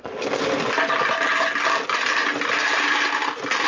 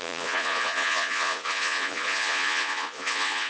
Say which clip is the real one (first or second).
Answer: first